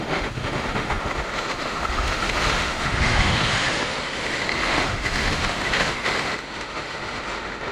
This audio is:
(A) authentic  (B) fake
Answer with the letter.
B